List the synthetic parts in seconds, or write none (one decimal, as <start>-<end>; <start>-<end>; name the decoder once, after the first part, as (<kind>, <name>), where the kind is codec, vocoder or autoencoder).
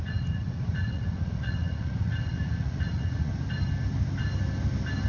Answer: 0.0-3.3 (vocoder, Vocos)